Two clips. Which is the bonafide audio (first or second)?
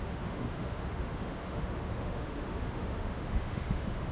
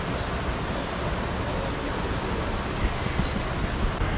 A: second